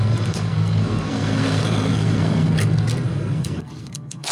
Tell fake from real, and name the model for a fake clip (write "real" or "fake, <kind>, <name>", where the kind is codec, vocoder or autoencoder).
fake, codec, SNAC